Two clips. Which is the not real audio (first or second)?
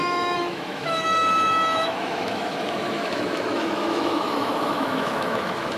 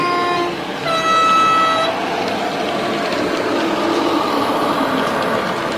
first